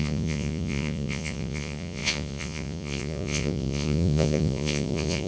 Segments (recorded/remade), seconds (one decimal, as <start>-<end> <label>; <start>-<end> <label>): 0.0-5.3 remade